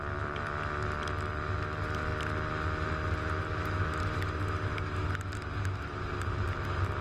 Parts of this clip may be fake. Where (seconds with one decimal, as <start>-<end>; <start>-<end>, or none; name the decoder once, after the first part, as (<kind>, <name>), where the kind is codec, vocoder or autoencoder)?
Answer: none